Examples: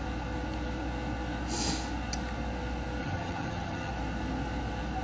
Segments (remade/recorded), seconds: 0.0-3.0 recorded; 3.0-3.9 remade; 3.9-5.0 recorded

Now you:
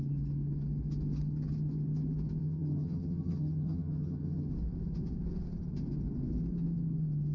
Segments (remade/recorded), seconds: 0.0-2.4 recorded; 2.4-4.5 remade; 4.5-7.3 recorded

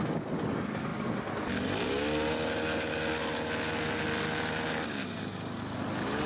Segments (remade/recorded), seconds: 0.0-6.3 recorded